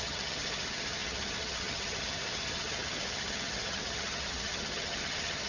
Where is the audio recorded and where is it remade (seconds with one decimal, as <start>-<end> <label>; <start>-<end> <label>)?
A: 0.0-5.5 remade